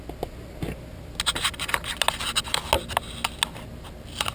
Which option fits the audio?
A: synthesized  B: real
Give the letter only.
B